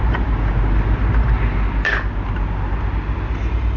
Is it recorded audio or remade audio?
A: recorded